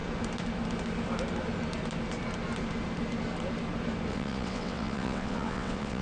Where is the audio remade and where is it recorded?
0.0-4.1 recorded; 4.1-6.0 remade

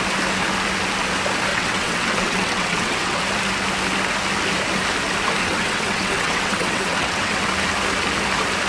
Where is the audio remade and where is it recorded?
0.0-1.5 recorded; 1.5-3.2 remade; 3.2-5.4 recorded; 5.4-7.5 remade; 7.5-8.7 recorded

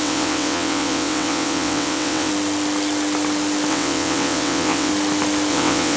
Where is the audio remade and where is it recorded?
0.0-2.3 remade; 2.3-3.7 recorded; 3.7-4.9 remade; 4.9-5.5 recorded; 5.5-6.0 remade

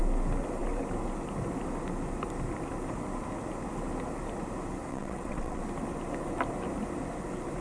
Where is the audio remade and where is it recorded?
0.0-4.9 recorded; 4.9-5.6 remade; 5.6-7.6 recorded